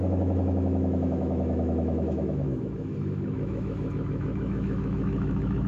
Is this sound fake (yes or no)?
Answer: yes